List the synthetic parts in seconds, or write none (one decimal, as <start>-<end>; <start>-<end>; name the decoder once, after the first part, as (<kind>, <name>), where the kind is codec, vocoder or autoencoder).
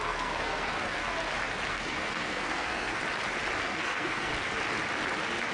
0.0-1.1 (codec, SNAC); 1.7-3.0; 3.6-4.3